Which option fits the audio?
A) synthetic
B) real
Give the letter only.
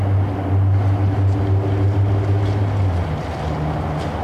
B